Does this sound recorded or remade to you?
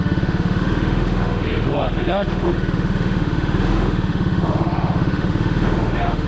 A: remade